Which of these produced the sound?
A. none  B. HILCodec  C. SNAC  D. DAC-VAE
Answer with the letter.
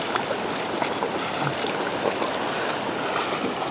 A